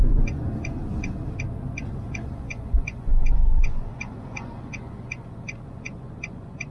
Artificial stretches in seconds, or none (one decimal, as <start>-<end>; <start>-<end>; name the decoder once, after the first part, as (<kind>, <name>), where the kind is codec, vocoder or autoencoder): 0.0-0.8 (vocoder, Vocos); 2.0-6.7